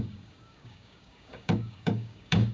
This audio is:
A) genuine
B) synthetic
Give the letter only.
B